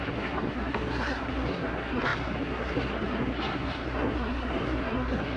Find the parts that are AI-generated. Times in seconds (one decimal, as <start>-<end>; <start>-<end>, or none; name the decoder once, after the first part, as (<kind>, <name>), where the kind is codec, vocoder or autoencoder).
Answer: 0.0-5.4 (codec, SNAC)